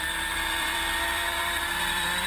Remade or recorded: remade